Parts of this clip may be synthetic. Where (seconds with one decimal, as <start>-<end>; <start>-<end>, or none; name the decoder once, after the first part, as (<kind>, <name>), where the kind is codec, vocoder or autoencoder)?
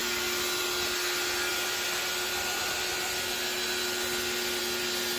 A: none